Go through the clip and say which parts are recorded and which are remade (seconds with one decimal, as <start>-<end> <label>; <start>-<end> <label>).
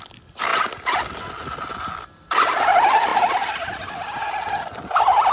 0.0-5.3 recorded